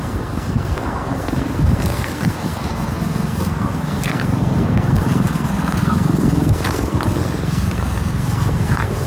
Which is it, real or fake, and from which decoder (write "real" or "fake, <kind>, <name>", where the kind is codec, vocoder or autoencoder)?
fake, codec, SNAC